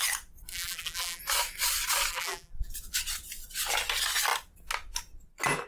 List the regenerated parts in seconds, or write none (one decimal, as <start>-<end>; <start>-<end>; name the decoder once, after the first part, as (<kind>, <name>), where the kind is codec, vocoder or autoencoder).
0.5-1.2 (vocoder, BigVGAN v2); 2.1-2.7